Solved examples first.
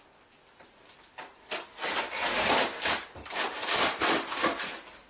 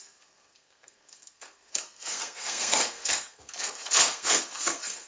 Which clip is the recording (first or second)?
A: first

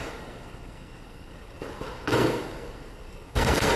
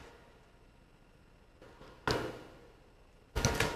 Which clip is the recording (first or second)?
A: second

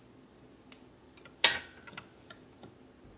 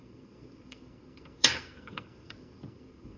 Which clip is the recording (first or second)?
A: first